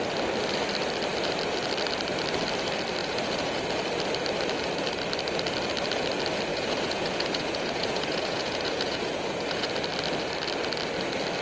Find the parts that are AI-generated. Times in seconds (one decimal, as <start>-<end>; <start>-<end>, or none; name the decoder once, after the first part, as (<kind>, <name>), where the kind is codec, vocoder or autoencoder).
3.0-3.6 (vocoder, Vocos); 6.5-9.7